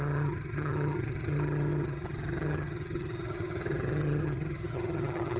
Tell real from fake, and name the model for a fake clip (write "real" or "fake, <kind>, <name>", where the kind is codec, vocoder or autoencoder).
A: fake, vocoder, HiFi-GAN